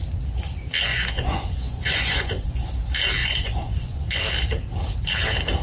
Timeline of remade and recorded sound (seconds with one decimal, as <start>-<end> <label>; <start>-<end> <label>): 0.0-0.9 recorded; 0.9-2.7 remade; 2.7-3.2 recorded; 3.2-4.2 remade; 4.2-5.6 recorded